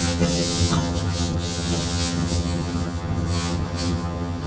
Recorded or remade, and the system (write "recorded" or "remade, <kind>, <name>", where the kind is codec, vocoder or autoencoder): remade, vocoder, HiFi-GAN